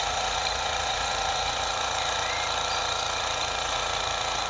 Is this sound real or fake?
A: fake